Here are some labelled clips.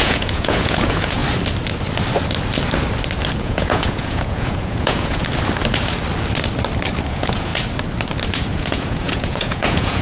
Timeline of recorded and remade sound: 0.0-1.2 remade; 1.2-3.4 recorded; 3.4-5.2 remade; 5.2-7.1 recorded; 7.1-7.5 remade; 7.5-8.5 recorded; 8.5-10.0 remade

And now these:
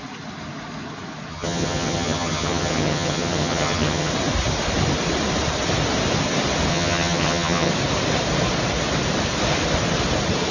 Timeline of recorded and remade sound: 0.0-1.3 recorded; 1.3-4.1 remade; 4.1-6.7 recorded; 6.7-7.7 remade; 7.7-10.5 recorded

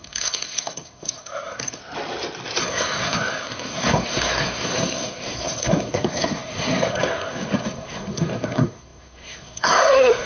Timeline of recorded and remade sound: 0.0-1.8 remade; 1.8-2.6 recorded; 2.6-10.3 remade

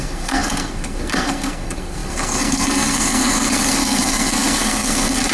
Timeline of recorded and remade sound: 0.0-5.3 remade

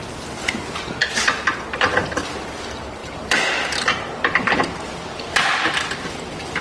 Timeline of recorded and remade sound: 0.0-3.0 recorded; 3.0-6.6 remade

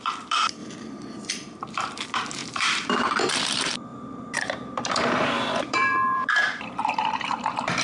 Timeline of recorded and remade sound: 0.0-7.8 remade

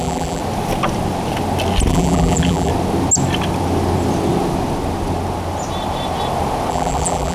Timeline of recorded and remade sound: 0.0-0.4 remade; 0.4-1.9 recorded; 1.9-2.7 remade; 2.7-6.7 recorded; 6.7-7.3 remade

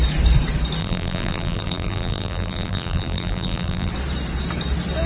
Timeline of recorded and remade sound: 0.0-0.8 recorded; 0.8-3.9 remade; 3.9-5.1 recorded